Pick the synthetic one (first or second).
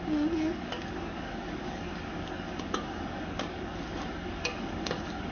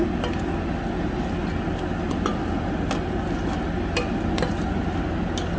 first